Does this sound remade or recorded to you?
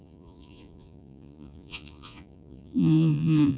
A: remade